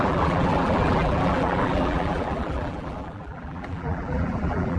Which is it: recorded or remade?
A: remade